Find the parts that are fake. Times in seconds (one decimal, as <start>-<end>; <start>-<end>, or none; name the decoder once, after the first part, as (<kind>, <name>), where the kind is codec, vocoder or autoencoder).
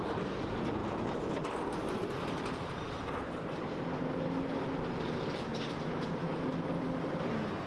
none